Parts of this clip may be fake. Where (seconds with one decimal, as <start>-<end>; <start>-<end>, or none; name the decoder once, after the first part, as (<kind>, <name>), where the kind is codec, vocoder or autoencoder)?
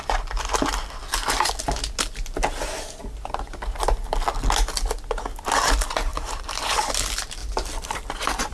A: 6.1-6.9 (vocoder, BigVGAN v2); 7.4-7.9